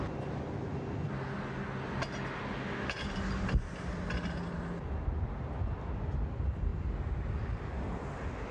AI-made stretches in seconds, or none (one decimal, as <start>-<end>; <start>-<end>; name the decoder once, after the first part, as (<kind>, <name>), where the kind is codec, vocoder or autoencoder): none